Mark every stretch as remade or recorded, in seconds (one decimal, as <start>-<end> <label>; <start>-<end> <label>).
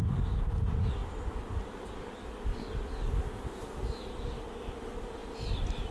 0.0-5.9 recorded